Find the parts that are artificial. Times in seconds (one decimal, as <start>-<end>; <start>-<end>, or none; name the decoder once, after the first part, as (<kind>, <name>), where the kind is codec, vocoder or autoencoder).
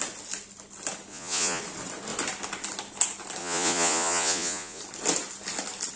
1.1-1.6 (vocoder, Vocos); 3.4-4.8